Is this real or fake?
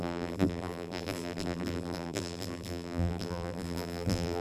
fake